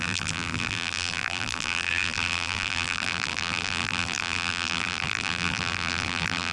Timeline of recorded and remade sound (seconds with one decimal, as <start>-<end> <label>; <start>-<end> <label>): 0.0-6.5 remade